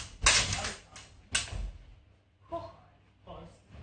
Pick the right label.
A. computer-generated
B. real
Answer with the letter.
B